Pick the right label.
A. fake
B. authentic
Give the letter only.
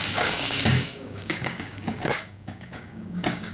A